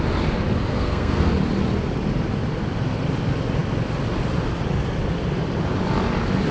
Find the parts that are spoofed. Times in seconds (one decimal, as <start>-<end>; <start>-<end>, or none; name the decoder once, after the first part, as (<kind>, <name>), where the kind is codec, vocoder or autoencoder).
0.7-1.3 (codec, SNAC)